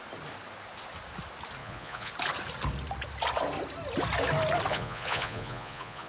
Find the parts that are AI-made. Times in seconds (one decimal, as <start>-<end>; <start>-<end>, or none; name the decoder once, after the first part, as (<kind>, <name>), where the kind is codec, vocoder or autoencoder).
1.6-2.1 (vocoder, Vocos); 4.7-6.1